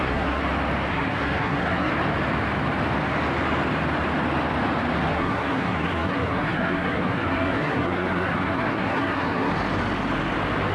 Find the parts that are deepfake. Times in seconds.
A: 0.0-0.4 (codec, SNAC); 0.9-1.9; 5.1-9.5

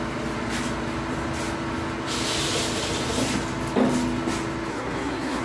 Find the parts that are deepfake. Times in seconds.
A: 4.7-5.4 (codec, SNAC)

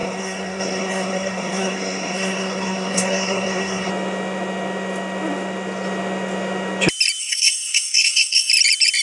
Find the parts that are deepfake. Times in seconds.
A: 0.0-3.9 (codec, SNAC); 7.2-8.5

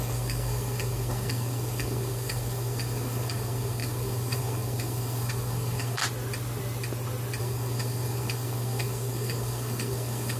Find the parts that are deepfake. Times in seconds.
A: 0.0-6.0 (codec, SNAC); 7.4-10.4

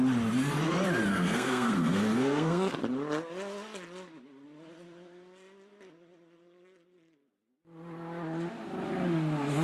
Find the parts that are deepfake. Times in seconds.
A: 1.1-2.7 (codec, SNAC)

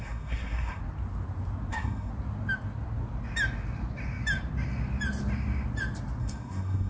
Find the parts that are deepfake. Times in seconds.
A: 0.0-0.8 (codec, SNAC); 1.7-2.1; 6.2-6.9